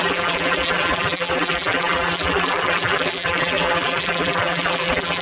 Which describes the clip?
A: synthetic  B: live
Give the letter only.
A